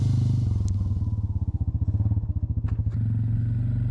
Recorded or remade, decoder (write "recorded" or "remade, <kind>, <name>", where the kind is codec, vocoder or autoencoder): recorded